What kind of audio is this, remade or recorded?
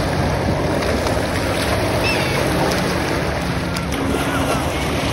recorded